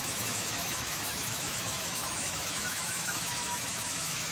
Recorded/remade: remade